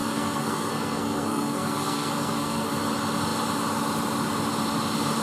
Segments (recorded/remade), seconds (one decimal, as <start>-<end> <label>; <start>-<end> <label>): 0.0-2.7 remade; 2.7-5.2 recorded